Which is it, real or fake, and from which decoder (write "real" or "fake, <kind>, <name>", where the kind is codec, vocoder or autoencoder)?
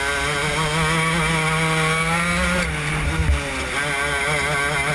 real